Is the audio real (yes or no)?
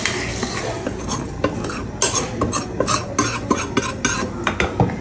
yes